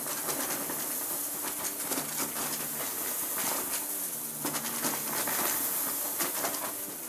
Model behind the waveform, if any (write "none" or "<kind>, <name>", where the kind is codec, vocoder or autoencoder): none